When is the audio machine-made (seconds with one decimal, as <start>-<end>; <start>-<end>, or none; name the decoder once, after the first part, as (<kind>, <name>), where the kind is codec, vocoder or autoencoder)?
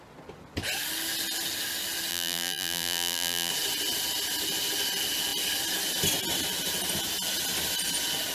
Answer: 2.1-3.5 (vocoder, BigVGAN v2)